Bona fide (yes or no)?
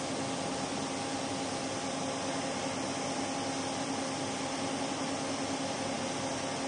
yes